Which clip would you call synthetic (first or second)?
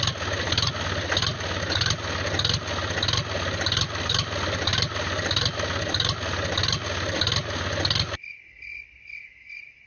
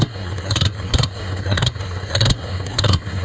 second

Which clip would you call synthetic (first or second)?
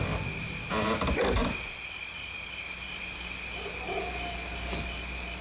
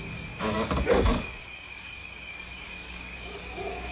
second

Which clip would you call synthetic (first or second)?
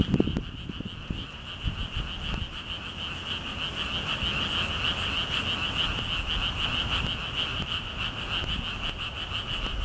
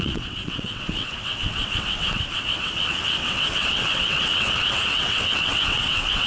second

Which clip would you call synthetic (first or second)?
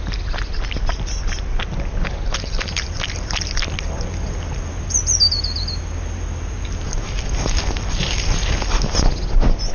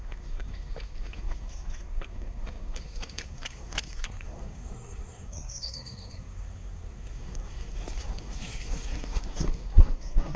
second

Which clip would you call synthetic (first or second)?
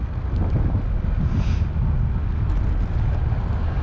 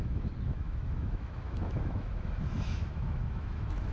second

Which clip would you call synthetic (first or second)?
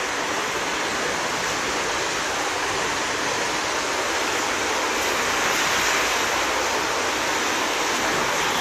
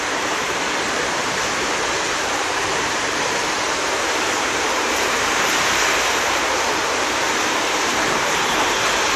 second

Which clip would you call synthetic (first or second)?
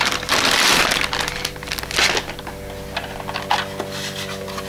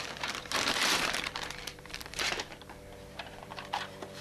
second